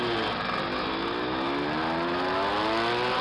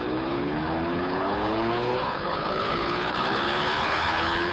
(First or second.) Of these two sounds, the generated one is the second